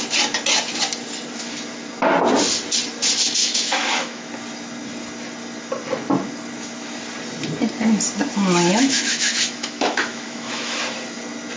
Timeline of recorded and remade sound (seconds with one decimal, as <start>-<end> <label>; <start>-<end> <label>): 0.0-3.4 recorded; 3.4-4.3 remade; 4.3-8.7 recorded; 8.7-10.8 remade; 10.8-11.6 recorded